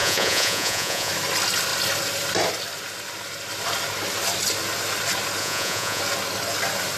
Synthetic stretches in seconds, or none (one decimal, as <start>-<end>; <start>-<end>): 0.0-1.1; 5.4-6.0